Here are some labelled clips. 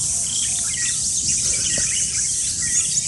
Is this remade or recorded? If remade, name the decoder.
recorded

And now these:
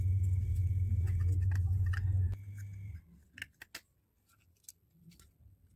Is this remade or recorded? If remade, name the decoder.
recorded